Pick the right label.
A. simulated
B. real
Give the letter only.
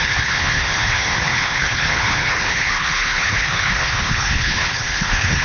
A